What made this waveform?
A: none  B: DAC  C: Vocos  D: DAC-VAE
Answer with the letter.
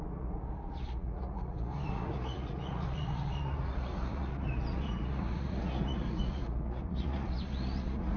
C